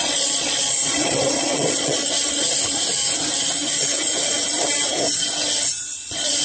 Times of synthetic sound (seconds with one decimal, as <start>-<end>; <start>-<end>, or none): 0.0-2.0; 5.8-6.4